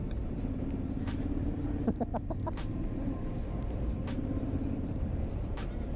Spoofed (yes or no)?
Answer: yes